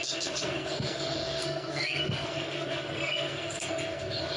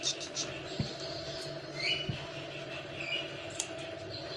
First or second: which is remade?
first